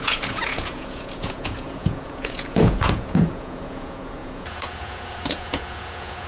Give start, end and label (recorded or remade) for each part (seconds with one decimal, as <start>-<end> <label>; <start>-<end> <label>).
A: 0.0-6.3 remade